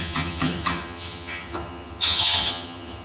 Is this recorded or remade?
remade